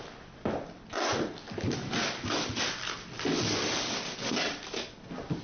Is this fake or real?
real